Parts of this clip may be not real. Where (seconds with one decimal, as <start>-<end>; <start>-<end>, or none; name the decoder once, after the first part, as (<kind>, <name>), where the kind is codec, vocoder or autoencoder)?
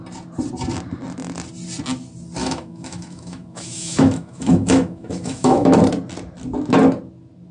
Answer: 2.4-5.8 (autoencoder, DAC-VAE)